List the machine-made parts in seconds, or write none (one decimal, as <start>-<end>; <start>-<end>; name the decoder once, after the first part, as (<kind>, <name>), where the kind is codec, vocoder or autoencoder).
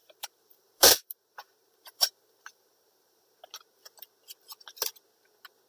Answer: 0.0-3.4 (vocoder, BigVGAN v2)